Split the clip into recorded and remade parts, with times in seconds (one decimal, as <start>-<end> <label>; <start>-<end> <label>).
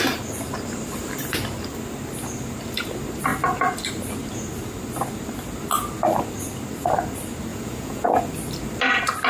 0.0-7.5 recorded; 7.5-8.2 remade; 8.2-9.3 recorded